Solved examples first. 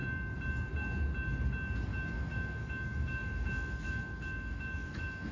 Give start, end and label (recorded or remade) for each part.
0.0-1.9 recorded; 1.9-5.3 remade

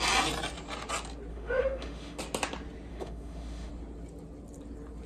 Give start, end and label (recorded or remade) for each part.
0.0-1.3 recorded; 1.3-2.2 remade; 2.2-2.9 recorded; 2.9-3.7 remade; 3.7-5.1 recorded